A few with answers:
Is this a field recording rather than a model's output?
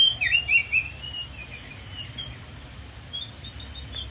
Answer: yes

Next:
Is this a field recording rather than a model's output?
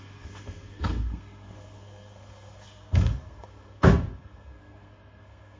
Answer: no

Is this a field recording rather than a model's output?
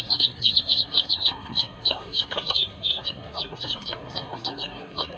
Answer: no